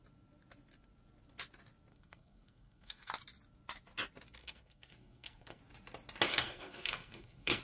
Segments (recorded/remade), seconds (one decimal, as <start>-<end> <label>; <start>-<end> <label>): 0.0-1.9 recorded; 1.9-3.1 remade; 3.1-4.4 recorded; 4.4-5.6 remade; 5.6-6.3 recorded; 6.3-7.6 remade